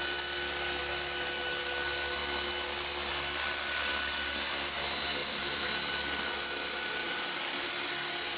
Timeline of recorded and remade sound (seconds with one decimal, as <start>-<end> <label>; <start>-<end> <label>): 0.0-5.2 recorded; 5.2-5.7 remade; 5.7-7.0 recorded; 7.0-7.7 remade; 7.7-8.4 recorded